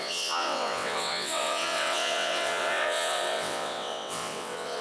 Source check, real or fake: fake